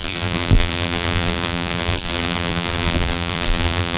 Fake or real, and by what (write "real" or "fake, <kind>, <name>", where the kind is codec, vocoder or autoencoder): fake, vocoder, BigVGAN v2